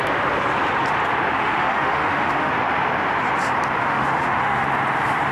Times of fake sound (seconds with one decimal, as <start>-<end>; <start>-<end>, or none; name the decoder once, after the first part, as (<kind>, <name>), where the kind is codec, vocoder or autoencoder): 1.4-2.5 (autoencoder, DAC-VAE); 3.8-4.6

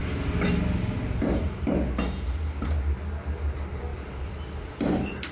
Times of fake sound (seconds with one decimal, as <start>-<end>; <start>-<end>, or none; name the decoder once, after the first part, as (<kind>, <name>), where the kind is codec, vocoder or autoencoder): none

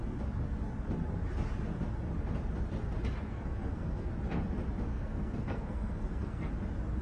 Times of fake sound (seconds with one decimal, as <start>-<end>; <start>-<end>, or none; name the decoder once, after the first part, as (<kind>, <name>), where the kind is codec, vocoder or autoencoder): 3.3-4.1 (codec, SNAC); 4.9-6.5

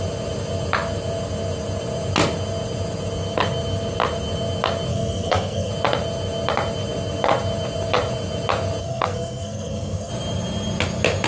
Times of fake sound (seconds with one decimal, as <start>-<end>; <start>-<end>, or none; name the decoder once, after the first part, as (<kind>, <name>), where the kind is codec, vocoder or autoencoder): 4.9-5.7 (codec, SNAC); 8.8-10.1

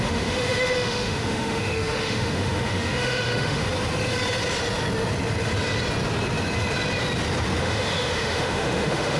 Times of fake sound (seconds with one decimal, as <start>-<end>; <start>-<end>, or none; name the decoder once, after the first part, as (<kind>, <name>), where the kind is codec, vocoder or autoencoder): 0.0-3.6 (autoencoder, DAC-VAE); 7.6-9.2